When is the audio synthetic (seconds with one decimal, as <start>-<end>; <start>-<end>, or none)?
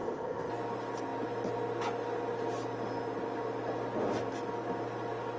0.0-0.5